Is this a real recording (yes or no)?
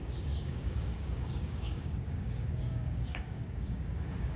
no